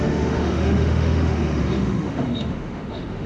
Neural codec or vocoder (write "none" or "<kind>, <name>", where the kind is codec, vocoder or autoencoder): autoencoder, DAC-VAE